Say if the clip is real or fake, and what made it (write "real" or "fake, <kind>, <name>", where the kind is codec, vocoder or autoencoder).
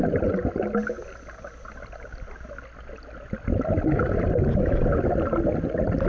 real